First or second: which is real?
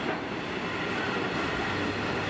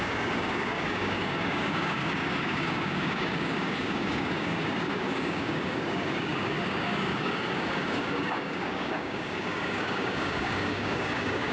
first